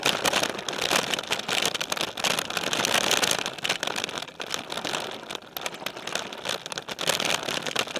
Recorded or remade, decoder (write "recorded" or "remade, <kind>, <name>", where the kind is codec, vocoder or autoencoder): recorded